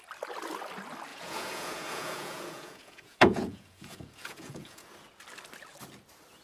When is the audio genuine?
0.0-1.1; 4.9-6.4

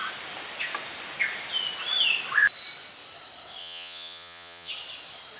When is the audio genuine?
0.0-3.6; 4.7-5.4

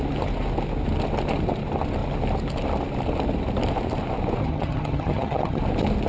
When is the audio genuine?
0.0-4.4; 5.6-6.1

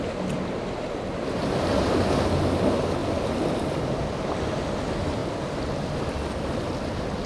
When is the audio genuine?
0.0-3.0; 4.0-7.3

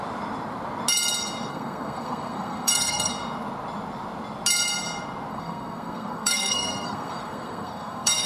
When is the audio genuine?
0.0-1.5; 3.1-5.3

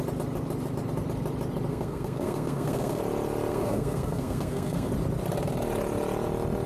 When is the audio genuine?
0.0-1.7; 3.0-3.5; 4.9-6.7

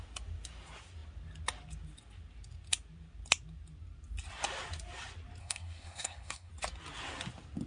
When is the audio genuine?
0.0-5.4; 6.5-7.7

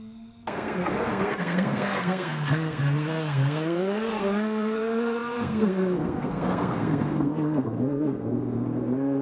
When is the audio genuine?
none